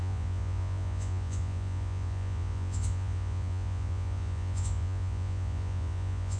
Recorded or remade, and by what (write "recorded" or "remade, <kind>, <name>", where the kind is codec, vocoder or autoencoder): remade, vocoder, Vocos